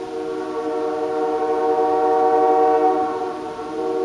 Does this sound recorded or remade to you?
recorded